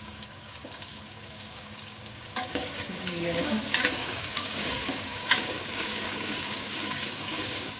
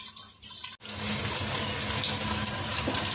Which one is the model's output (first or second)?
first